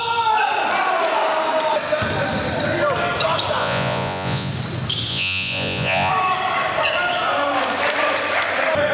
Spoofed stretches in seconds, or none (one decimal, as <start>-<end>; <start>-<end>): 3.6-4.5; 5.1-6.1